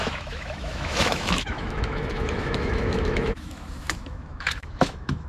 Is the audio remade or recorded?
remade